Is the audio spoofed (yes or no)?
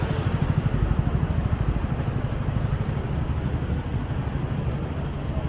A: no